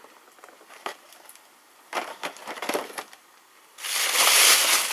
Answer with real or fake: real